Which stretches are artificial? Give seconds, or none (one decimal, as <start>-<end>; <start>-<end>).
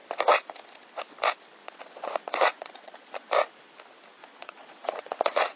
1.6-3.3; 4.2-5.6